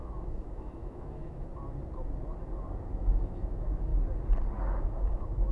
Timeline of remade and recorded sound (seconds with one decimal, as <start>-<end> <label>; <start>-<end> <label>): 0.0-1.5 remade; 1.5-3.0 recorded; 3.0-3.9 remade; 3.9-4.8 recorded; 4.8-5.5 remade